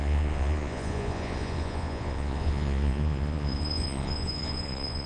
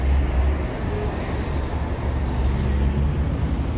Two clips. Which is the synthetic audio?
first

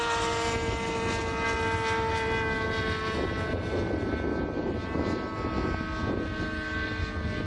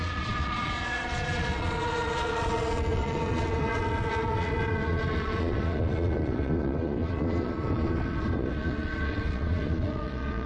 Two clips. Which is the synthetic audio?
second